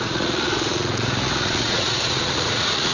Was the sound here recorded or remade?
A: remade